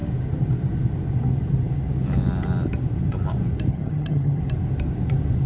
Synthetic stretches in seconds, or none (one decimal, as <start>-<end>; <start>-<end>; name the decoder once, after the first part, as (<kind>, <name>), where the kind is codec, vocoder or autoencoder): 3.7-4.4 (vocoder, HiFi-GAN)